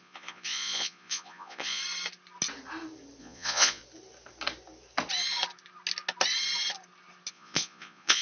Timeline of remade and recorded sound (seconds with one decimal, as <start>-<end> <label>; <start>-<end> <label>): 0.0-1.8 remade; 1.8-3.2 recorded; 3.2-3.8 remade; 3.8-7.3 recorded; 7.3-8.2 remade